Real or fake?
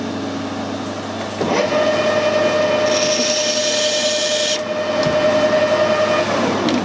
real